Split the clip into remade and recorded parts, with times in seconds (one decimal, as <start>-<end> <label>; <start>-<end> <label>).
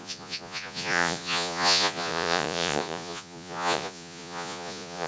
0.0-5.1 remade